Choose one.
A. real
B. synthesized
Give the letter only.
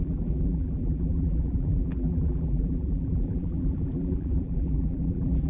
B